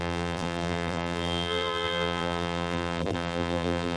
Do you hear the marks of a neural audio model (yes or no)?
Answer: yes